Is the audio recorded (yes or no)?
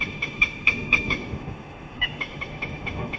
no